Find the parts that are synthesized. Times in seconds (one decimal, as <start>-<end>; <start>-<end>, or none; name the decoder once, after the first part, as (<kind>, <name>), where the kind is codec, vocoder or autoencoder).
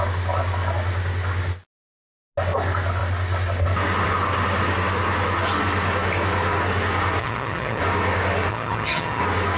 7.2-7.8 (vocoder, HiFi-GAN); 8.5-9.2